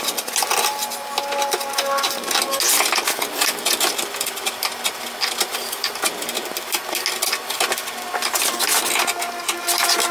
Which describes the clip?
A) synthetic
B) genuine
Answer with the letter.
B